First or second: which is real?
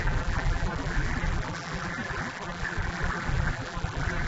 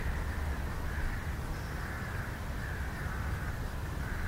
second